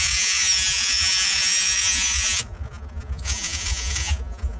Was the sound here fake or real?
fake